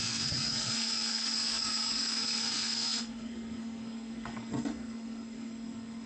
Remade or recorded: remade